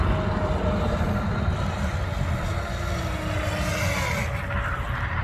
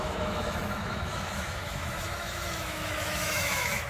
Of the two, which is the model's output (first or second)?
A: second